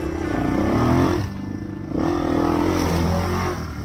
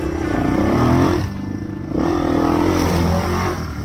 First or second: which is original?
first